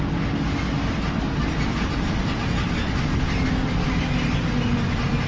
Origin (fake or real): real